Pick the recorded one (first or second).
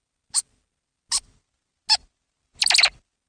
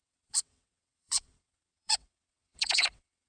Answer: first